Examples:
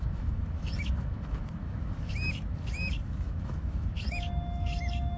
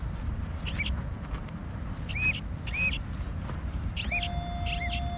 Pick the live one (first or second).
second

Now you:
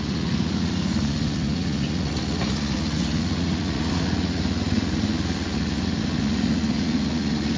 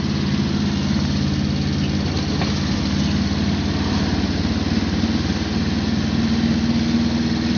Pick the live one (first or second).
second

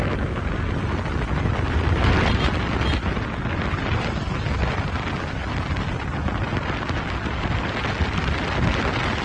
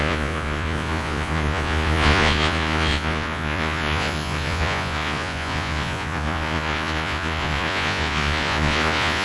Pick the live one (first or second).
first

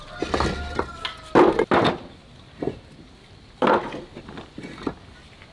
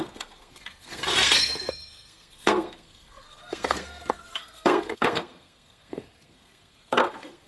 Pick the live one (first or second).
first